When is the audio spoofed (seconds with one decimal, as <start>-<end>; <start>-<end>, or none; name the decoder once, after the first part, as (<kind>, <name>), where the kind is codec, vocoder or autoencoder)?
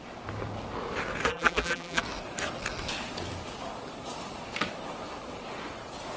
1.3-2.0 (vocoder, BigVGAN v2)